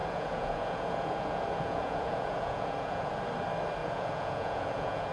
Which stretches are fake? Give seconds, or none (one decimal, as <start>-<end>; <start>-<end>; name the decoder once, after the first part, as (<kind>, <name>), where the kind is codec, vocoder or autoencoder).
0.0-3.1 (vocoder, Vocos); 3.8-5.1